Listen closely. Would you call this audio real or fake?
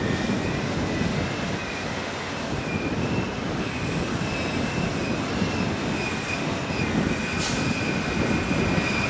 real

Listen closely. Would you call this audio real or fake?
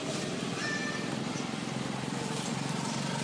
real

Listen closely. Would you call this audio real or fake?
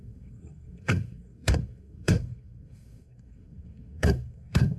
fake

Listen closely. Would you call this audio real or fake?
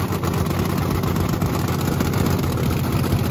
real